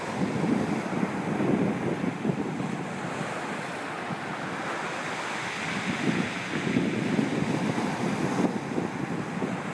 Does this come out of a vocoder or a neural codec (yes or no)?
no